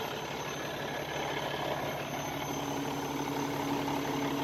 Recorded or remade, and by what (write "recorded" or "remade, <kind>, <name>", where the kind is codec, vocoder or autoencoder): recorded